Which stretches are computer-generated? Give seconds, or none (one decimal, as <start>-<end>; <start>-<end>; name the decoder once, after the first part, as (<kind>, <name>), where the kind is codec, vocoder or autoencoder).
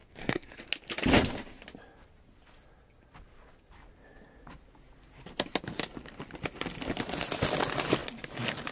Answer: 0.0-0.6 (codec, SNAC)